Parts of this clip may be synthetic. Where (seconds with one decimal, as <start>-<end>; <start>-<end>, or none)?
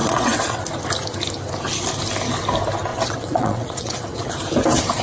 0.0-0.6; 2.9-4.3